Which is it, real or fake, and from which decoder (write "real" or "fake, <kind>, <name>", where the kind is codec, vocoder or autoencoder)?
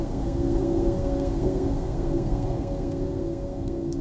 fake, codec, SNAC